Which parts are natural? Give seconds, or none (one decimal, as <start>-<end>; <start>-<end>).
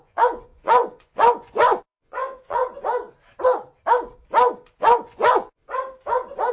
2.6-4.8; 5.6-6.5